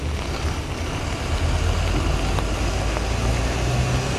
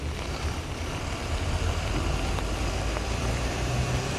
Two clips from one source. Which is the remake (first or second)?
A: second